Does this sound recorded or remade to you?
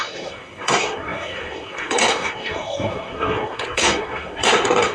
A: remade